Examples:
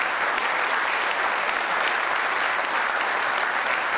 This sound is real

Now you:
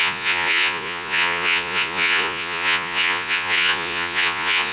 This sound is fake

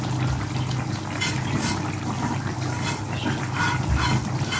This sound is real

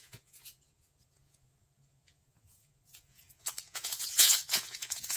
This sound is fake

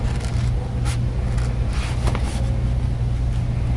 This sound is real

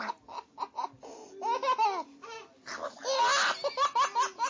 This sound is real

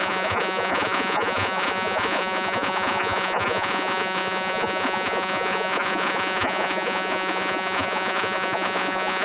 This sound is fake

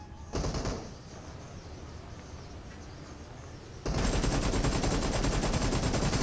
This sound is real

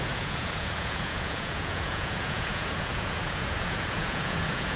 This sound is fake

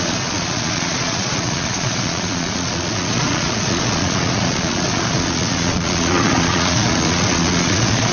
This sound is fake